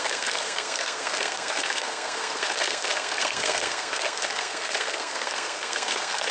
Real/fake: fake